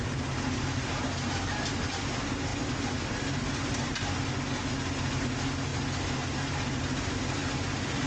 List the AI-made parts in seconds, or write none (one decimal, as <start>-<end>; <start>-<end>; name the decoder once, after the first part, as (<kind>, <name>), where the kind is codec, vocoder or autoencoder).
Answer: none